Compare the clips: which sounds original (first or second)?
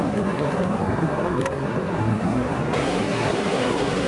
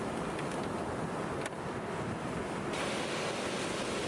second